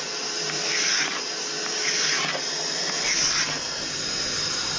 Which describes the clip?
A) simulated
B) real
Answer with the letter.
B